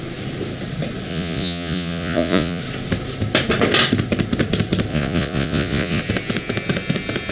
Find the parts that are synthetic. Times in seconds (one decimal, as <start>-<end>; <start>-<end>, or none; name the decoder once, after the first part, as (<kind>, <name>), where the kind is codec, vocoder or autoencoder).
1.1-2.6 (vocoder, Vocos); 4.9-6.0